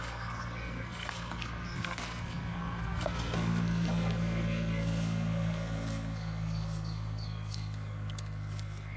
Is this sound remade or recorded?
remade